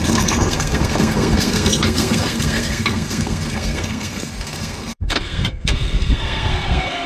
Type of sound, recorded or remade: remade